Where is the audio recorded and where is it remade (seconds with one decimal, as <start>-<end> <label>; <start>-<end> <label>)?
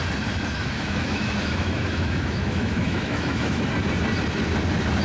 0.0-0.6 recorded; 0.6-3.6 remade; 3.6-5.0 recorded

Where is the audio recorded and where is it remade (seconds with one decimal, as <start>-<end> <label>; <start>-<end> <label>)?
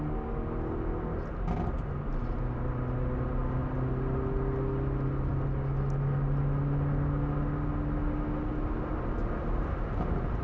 0.0-10.4 recorded